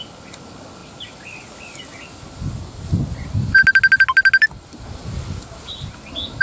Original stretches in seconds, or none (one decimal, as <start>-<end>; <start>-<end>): 0.0-6.4